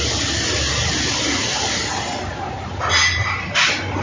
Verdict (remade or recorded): recorded